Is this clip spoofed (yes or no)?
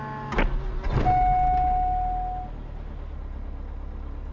no